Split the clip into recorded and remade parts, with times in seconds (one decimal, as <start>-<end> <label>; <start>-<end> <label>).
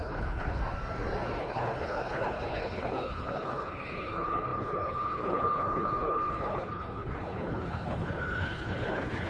0.0-0.6 remade; 0.6-1.4 recorded; 1.4-9.3 remade